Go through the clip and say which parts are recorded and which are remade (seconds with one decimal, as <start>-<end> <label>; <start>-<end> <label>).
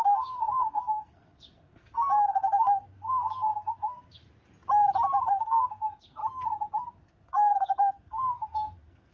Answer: 0.0-4.2 remade; 4.2-5.3 recorded; 5.3-6.2 remade; 6.2-6.9 recorded; 6.9-9.1 remade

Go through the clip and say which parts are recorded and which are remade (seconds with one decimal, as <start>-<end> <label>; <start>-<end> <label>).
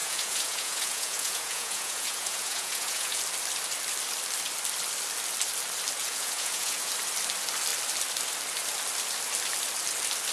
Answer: 0.0-3.2 remade; 3.2-6.0 recorded; 6.0-6.9 remade; 6.9-10.3 recorded